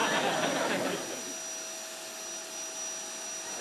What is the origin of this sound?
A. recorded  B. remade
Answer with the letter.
A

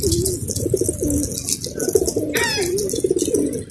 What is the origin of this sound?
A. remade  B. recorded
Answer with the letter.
B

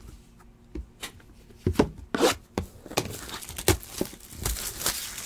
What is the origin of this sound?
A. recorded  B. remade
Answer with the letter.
A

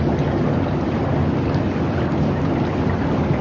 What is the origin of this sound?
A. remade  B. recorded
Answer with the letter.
B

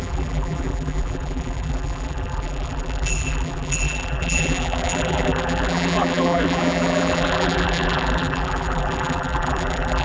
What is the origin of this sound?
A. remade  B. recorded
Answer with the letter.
A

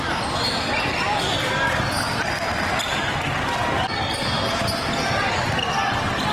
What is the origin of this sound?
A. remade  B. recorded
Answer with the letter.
B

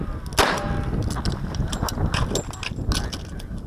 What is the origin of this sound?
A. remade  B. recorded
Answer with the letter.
B